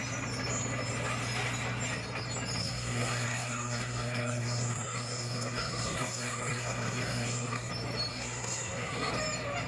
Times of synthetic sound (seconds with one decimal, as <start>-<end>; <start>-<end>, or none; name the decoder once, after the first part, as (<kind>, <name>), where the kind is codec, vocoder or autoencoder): 2.6-7.7 (codec, SNAC); 8.1-9.1